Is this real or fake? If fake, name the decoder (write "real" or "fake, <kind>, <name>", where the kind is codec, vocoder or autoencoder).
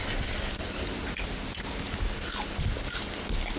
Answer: real